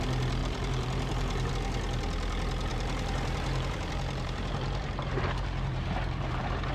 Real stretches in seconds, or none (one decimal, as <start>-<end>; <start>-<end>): 0.0-0.4; 1.5-2.7